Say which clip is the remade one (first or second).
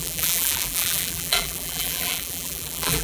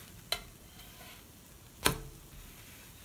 first